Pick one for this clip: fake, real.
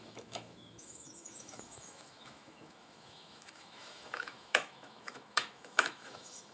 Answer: fake